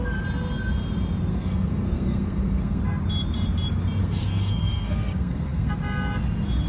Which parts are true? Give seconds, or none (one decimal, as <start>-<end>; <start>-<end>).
0.0-1.3; 2.8-4.0; 5.7-6.7

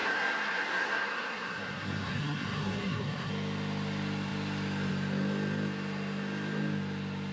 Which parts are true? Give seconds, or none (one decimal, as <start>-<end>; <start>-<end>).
3.3-7.3